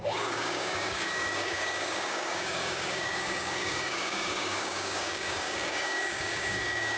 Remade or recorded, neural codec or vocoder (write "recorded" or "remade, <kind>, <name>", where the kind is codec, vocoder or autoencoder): remade, codec, DAC